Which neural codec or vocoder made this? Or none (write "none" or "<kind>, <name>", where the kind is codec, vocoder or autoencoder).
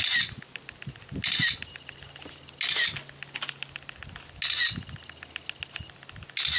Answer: none